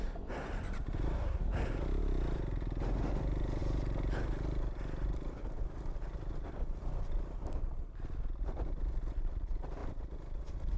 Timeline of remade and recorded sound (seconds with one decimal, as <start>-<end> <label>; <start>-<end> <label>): 0.0-1.4 remade; 1.4-2.0 recorded; 2.0-3.6 remade; 3.6-6.6 recorded; 6.6-9.8 remade; 9.8-10.8 recorded